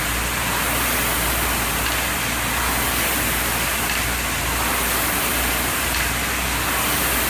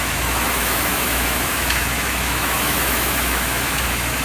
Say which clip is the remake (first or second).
second